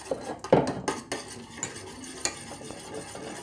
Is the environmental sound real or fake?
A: real